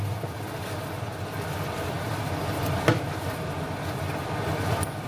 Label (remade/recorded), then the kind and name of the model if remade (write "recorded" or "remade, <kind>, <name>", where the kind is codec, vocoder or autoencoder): remade, vocoder, BigVGAN v2